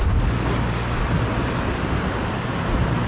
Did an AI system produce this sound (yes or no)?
no